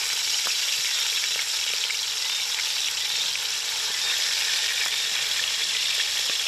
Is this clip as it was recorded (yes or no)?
no